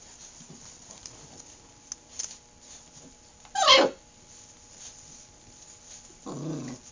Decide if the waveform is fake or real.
real